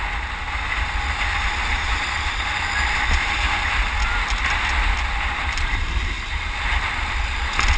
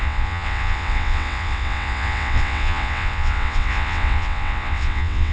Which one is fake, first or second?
second